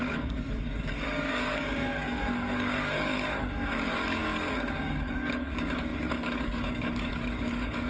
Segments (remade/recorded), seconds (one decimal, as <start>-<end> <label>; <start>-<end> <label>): 0.0-7.9 remade